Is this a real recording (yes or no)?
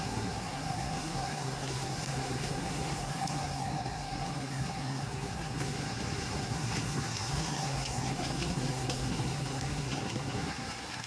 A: no